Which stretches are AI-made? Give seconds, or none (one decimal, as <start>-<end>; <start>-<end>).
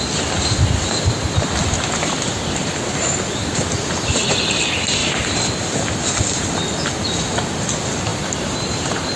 5.0-5.5; 8.1-9.2